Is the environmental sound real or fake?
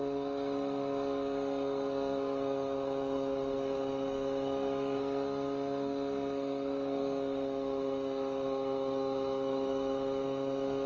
fake